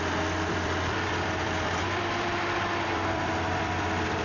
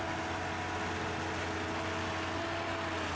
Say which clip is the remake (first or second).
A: first